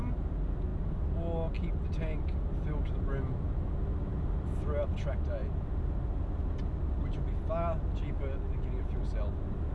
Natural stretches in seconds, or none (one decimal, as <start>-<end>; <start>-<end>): 0.0-9.7